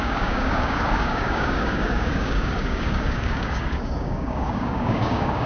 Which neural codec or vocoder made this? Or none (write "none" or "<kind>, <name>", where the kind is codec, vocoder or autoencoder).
codec, DAC